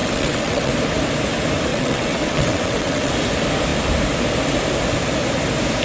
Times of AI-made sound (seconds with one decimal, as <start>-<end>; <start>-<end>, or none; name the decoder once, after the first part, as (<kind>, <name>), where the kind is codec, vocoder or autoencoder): 0.0-0.7 (vocoder, WaveNeXt); 1.7-3.1